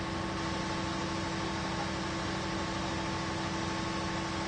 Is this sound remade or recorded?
recorded